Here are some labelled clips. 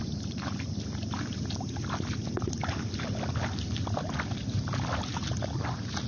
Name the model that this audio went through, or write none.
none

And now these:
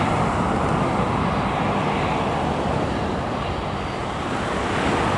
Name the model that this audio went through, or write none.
none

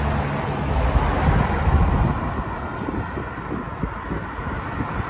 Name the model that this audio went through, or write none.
none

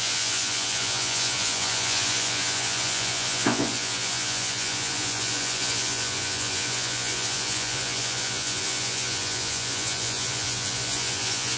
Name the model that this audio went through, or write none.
vocoder, Vocos